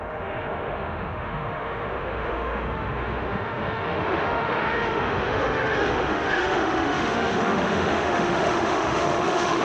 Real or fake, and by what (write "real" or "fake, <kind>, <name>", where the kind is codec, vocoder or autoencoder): fake, autoencoder, DAC-VAE